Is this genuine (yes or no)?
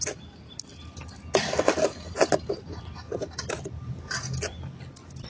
yes